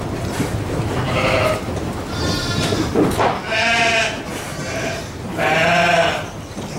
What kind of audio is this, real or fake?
real